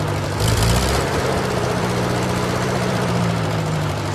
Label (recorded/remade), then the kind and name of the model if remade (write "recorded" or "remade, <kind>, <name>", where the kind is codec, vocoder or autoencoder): remade, vocoder, BigVGAN v2